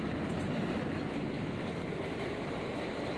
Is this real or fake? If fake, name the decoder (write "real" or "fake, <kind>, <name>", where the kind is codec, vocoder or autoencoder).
real